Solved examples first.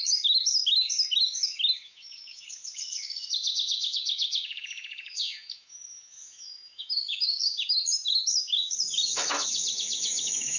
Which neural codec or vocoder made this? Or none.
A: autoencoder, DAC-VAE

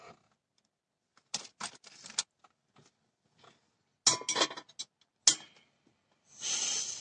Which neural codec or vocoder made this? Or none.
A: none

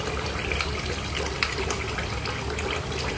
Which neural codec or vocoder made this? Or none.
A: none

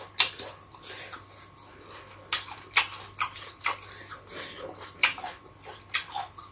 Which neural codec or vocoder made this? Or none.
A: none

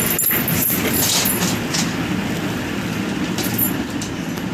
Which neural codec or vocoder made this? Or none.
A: none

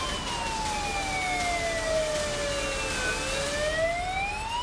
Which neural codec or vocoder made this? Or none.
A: none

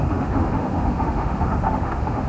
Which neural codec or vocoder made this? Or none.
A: autoencoder, DAC-VAE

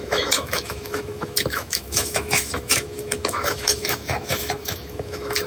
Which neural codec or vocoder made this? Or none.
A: autoencoder, DAC-VAE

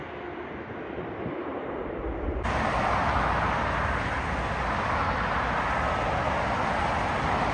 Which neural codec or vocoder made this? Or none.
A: none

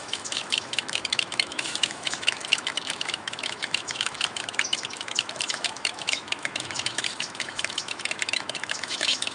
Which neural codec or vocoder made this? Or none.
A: autoencoder, DAC-VAE